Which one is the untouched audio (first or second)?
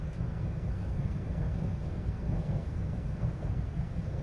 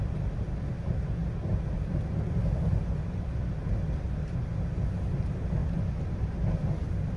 second